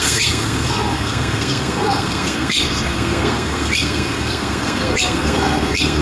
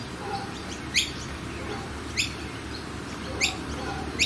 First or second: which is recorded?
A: second